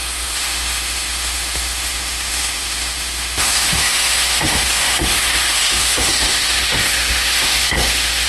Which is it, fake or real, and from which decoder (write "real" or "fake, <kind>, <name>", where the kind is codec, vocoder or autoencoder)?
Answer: fake, autoencoder, DAC-VAE